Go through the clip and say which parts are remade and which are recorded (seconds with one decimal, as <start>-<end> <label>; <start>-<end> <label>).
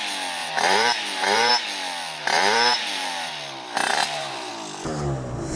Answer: 0.0-0.4 recorded; 0.4-1.5 remade; 1.5-2.2 recorded; 2.2-3.3 remade; 3.3-3.9 recorded; 3.9-4.5 remade; 4.5-5.6 recorded